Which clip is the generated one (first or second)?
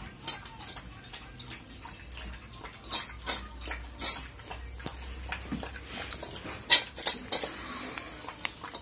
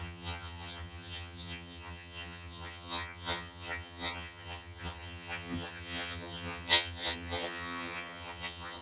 second